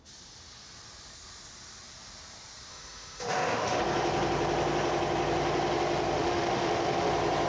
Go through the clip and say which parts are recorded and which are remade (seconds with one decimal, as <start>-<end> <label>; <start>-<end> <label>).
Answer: 0.0-2.7 recorded; 2.7-3.8 remade; 3.8-6.2 recorded; 6.2-7.1 remade; 7.1-7.5 recorded